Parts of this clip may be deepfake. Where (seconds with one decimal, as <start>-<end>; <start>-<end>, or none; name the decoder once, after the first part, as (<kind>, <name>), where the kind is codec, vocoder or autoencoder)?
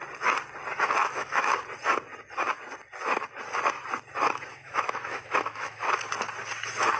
1.0-1.5 (autoencoder, DAC-VAE); 4.5-5.9